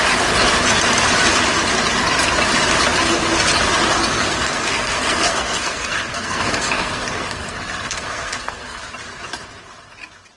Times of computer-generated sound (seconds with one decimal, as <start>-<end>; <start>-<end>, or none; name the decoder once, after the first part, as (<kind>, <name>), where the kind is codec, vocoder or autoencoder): 4.0-8.8 (codec, SNAC)